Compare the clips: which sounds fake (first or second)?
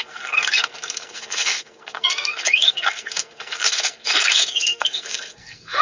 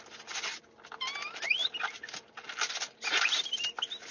first